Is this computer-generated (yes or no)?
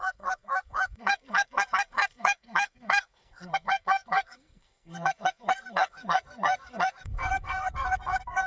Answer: yes